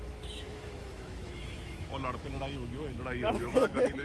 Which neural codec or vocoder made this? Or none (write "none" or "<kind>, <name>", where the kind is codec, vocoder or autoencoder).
autoencoder, DAC-VAE